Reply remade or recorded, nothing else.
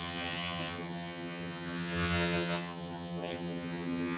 remade